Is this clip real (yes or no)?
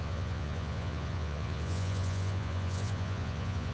no